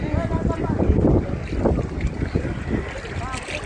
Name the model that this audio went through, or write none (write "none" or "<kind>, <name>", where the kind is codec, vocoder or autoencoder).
none